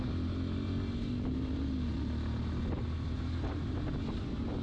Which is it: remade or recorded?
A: recorded